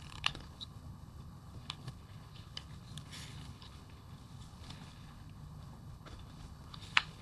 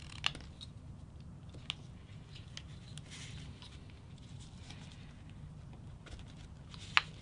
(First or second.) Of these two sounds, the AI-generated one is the first